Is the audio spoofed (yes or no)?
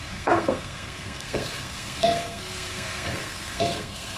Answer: yes